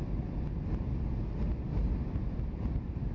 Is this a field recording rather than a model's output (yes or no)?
yes